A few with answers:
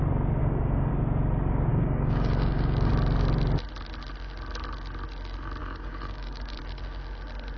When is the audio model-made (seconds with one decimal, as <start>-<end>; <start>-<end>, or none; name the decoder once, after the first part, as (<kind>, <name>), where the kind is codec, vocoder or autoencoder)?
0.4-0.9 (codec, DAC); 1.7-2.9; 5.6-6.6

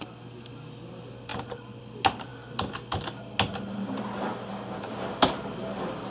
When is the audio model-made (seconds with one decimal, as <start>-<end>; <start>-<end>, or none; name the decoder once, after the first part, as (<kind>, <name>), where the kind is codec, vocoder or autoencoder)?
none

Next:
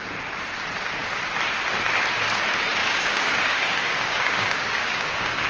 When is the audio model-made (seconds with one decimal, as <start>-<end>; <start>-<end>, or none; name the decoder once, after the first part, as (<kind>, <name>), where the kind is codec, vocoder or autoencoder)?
2.8-5.5 (codec, DAC)

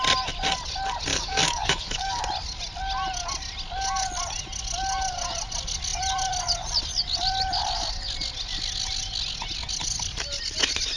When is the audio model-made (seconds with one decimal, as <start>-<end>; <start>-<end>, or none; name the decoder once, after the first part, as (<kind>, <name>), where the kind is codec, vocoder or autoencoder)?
1.1-2.2 (codec, DAC)